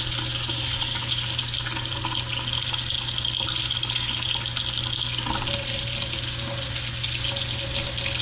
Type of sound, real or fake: real